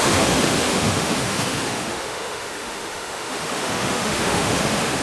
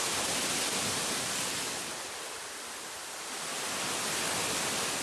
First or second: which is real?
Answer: second